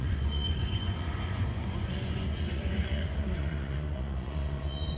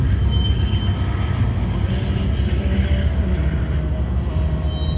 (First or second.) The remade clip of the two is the first